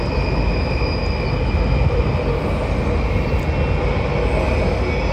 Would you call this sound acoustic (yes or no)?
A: yes